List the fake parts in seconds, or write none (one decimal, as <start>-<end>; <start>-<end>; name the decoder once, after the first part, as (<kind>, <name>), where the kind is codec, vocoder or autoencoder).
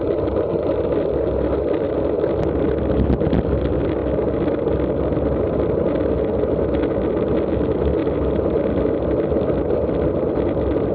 none